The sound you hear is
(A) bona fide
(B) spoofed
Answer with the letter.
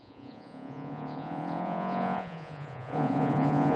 B